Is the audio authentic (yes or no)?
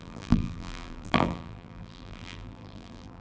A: no